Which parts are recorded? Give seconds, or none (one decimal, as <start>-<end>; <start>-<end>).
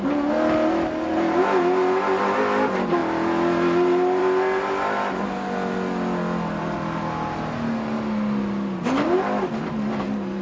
0.0-10.4